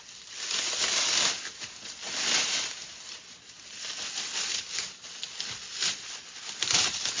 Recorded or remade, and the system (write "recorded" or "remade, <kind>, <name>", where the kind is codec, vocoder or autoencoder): recorded